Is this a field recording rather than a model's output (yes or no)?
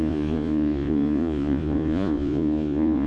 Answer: no